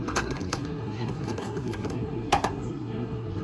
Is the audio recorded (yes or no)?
no